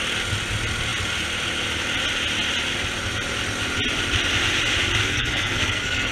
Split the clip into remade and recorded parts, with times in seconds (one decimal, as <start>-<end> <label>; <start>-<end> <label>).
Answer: 0.0-5.0 recorded; 5.0-6.1 remade